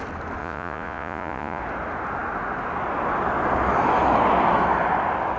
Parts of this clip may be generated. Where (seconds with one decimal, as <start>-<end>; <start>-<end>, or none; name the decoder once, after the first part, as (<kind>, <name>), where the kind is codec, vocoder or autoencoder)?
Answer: 0.4-1.6 (vocoder, Vocos)